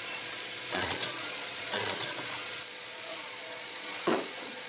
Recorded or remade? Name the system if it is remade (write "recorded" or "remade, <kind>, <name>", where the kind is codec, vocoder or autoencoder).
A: remade, vocoder, Vocos